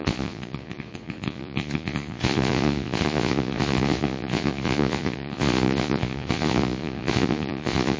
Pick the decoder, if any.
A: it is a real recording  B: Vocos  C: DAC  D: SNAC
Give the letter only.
B